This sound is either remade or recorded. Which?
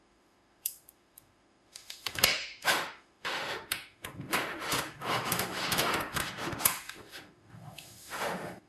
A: remade